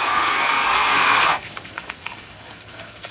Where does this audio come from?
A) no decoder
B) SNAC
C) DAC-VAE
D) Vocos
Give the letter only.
B